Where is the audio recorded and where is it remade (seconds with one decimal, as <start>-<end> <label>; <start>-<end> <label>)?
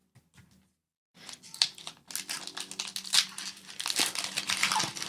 0.0-5.1 recorded